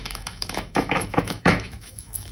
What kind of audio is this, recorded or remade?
remade